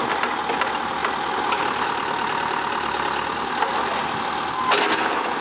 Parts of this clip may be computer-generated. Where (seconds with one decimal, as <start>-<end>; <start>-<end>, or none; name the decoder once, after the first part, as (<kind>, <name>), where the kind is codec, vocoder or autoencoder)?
1.0-4.2 (vocoder, BigVGAN v2)